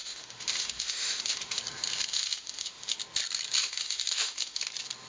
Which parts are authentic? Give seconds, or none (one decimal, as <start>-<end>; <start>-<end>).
1.6-2.1; 3.0-3.6; 4.6-5.1